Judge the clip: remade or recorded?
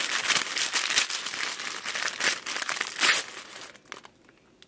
recorded